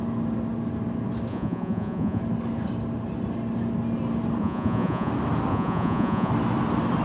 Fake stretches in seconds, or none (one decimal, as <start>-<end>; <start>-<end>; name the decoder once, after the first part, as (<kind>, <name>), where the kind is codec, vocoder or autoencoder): 1.3-2.2 (vocoder, Vocos); 4.4-5.1; 5.5-6.3